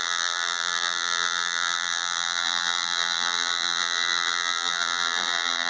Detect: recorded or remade remade